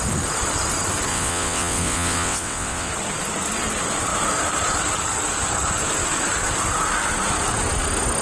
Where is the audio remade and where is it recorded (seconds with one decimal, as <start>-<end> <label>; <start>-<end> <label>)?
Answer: 0.0-1.1 recorded; 1.1-2.9 remade; 2.9-8.2 recorded